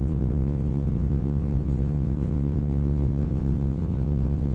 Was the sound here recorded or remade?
remade